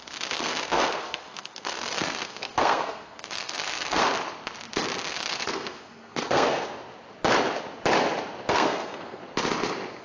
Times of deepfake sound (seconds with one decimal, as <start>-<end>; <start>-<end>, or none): 0.0-4.0; 5.1-6.7; 8.5-9.2